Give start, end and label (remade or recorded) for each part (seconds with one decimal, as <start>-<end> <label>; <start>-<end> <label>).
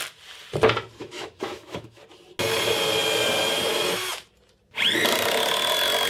0.0-1.0 recorded; 1.0-2.0 remade; 2.0-6.1 recorded